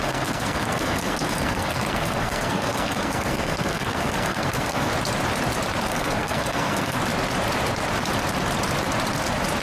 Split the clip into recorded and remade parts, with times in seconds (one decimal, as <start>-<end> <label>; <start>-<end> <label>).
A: 0.0-4.9 remade; 4.9-5.9 recorded; 5.9-7.0 remade; 7.0-9.6 recorded